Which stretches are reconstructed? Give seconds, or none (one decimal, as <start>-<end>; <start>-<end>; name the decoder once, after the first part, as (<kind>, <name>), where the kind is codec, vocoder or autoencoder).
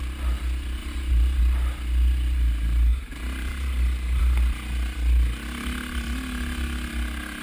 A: 0.8-1.4 (vocoder, BigVGAN v2); 2.9-4.2